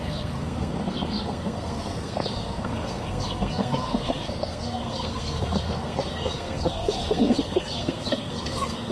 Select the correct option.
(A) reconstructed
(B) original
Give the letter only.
A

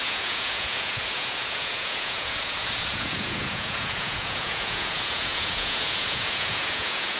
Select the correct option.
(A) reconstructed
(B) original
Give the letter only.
A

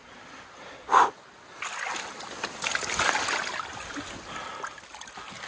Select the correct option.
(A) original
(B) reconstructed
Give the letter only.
A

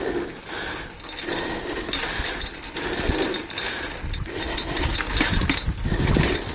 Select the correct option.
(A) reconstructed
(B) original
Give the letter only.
B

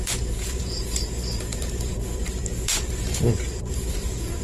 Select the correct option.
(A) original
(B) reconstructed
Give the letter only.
B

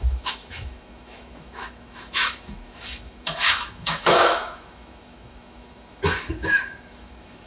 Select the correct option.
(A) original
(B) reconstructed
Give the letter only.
B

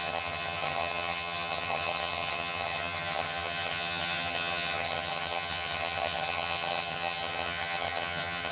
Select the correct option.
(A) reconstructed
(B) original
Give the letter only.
A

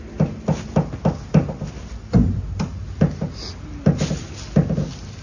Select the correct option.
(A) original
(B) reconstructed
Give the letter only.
A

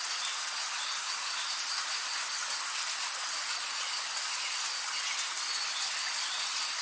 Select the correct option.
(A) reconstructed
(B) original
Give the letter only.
B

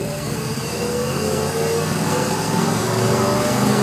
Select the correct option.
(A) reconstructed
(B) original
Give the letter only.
A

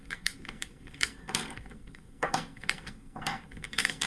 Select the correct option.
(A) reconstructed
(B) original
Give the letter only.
A